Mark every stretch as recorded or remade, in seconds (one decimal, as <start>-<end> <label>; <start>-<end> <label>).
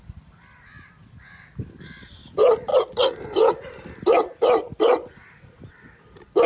0.0-6.5 recorded